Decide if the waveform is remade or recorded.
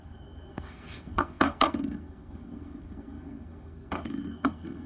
remade